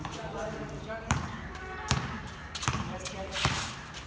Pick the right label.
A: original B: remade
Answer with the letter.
B